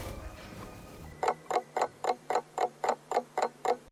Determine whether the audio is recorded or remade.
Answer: remade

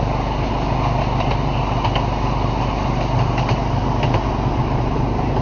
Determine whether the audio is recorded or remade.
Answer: recorded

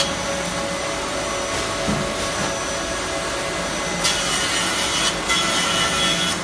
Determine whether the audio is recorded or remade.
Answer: recorded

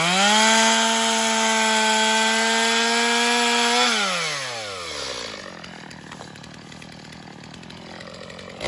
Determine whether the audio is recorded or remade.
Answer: recorded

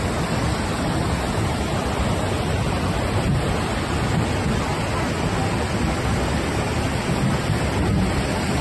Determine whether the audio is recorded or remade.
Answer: recorded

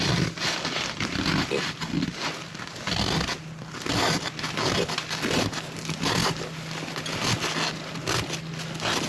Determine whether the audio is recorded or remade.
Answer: recorded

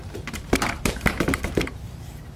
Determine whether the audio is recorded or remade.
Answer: remade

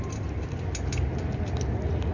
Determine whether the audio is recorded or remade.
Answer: recorded